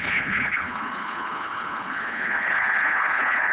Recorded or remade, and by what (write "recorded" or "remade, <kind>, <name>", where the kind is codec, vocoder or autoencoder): remade, codec, HILCodec